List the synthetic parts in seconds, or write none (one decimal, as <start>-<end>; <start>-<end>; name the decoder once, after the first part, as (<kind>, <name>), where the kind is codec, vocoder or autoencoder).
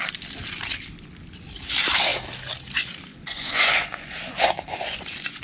3.1-5.4 (vocoder, Vocos)